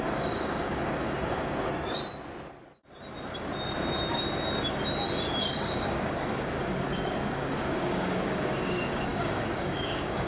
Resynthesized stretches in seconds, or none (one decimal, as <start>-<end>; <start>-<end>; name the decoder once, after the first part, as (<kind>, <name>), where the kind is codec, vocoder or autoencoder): 0.0-2.0 (codec, DAC); 5.4-10.3